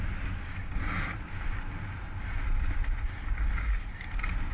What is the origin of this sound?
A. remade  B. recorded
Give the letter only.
B